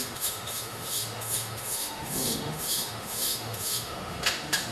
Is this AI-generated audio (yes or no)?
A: yes